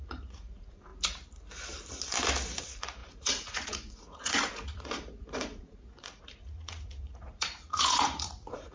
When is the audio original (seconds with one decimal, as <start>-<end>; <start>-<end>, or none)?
0.9-2.6